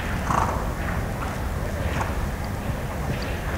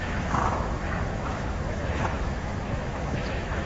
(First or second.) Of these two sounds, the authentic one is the first